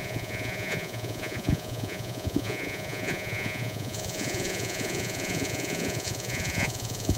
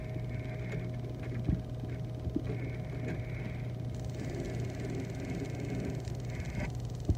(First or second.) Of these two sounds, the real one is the second